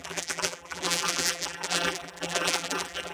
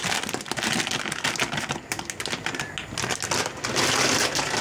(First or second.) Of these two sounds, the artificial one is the first